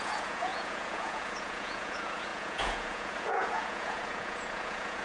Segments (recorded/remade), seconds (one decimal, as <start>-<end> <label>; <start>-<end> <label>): 0.0-5.0 remade